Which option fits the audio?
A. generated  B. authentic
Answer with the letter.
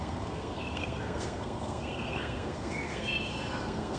A